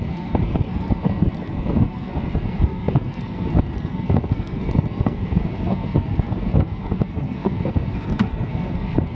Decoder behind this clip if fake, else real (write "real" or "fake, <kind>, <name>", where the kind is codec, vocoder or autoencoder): fake, codec, SNAC